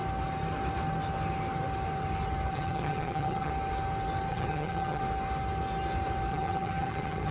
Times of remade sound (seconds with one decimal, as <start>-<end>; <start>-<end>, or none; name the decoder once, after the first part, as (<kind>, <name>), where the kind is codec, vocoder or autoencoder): 2.5-3.5 (vocoder, HiFi-GAN); 4.3-5.0; 6.3-7.3